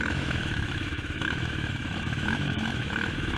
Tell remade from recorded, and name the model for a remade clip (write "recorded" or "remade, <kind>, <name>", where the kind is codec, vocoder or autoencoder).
remade, autoencoder, DAC-VAE